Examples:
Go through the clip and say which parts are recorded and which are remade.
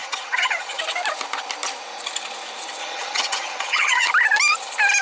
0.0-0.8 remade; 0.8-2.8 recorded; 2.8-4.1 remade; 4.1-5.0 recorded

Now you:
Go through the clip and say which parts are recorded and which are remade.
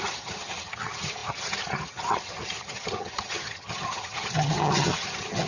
0.0-5.5 remade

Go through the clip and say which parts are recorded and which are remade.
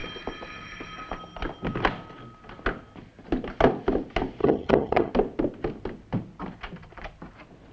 0.0-4.4 recorded; 4.4-5.1 remade; 5.1-7.7 recorded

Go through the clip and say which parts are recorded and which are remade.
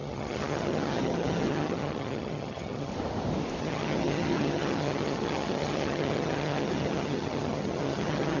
0.0-2.9 remade; 2.9-3.6 recorded; 3.6-8.4 remade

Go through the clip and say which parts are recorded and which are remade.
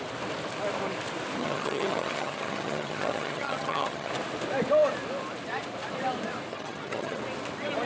0.0-1.4 recorded; 1.4-4.1 remade; 4.1-6.5 recorded; 6.5-7.2 remade; 7.2-7.9 recorded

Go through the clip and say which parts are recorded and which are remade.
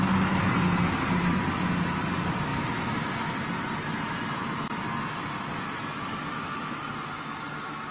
0.0-7.9 recorded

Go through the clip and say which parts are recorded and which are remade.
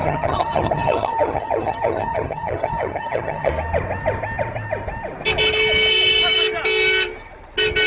0.0-3.5 remade; 3.5-7.9 recorded